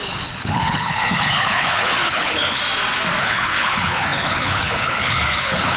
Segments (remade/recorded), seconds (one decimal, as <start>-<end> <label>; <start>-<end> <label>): 0.0-2.6 remade; 2.6-3.2 recorded; 3.2-5.8 remade